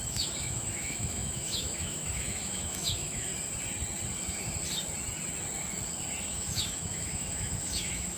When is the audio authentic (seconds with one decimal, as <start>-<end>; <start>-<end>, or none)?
3.3-6.2